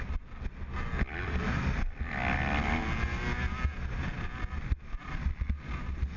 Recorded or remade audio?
recorded